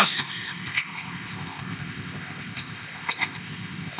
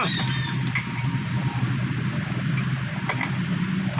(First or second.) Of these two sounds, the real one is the second